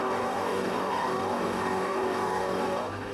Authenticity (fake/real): fake